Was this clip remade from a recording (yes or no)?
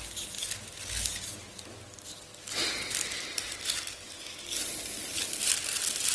no